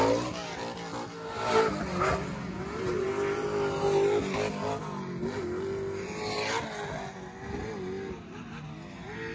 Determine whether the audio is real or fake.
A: real